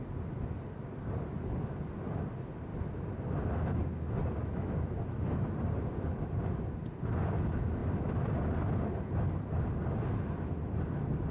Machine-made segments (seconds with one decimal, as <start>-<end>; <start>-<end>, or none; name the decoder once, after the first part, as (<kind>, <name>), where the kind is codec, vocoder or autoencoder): 4.4-5.2 (autoencoder, DAC-VAE)